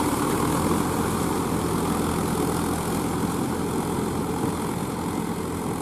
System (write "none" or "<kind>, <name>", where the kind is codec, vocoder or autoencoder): none